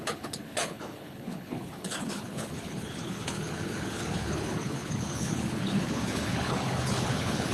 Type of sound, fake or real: fake